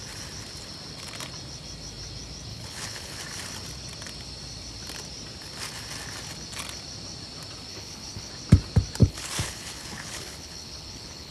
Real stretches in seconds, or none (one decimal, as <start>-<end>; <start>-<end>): 0.0-2.5; 3.2-7.7; 8.3-9.0